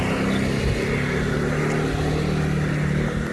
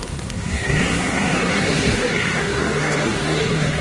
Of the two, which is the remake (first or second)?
second